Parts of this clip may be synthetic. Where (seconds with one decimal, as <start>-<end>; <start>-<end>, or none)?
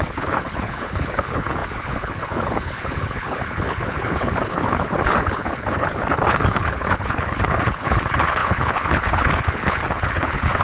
0.0-10.6